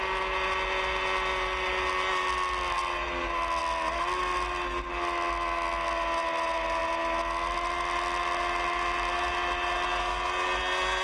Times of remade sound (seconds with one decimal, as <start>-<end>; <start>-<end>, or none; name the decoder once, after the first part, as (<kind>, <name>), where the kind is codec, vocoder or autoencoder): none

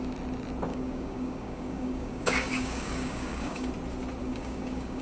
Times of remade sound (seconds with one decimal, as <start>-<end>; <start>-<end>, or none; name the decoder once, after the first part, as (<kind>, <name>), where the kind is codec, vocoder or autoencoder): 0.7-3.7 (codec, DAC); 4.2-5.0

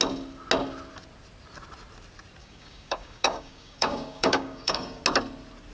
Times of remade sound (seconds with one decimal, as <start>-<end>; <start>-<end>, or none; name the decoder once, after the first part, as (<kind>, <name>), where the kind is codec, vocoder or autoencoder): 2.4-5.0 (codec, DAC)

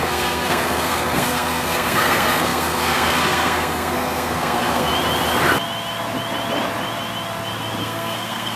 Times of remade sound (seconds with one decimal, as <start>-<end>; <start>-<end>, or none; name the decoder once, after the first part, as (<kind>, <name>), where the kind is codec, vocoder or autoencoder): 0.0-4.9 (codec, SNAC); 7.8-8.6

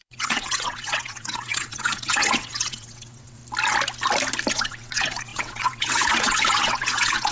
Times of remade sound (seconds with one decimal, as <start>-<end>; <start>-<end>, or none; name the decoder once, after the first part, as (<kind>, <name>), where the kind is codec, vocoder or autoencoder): 0.0-3.4 (vocoder, WaveNeXt); 4.5-7.3

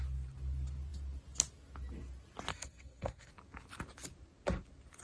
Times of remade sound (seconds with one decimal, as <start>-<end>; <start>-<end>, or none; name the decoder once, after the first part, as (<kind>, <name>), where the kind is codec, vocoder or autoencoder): 2.5-3.3 (codec, SNAC)

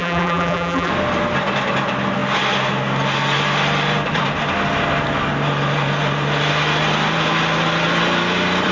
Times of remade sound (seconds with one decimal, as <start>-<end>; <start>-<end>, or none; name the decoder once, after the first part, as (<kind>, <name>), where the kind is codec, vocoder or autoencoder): 0.0-0.9 (vocoder, BigVGAN v2)

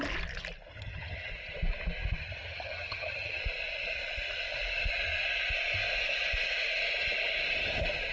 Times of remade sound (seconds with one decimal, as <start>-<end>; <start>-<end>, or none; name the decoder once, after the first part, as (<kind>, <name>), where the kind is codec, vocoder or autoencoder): 0.7-1.3 (vocoder, HiFi-GAN); 2.2-3.4